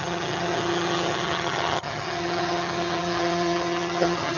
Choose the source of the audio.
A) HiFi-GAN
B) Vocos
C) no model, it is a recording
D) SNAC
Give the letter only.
A